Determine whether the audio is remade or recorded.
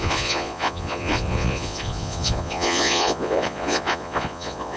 remade